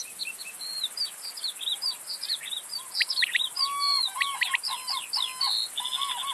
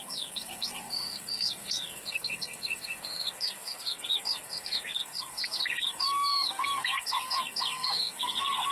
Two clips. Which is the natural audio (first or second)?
first